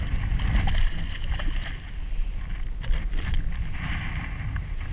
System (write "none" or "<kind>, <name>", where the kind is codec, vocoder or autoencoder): none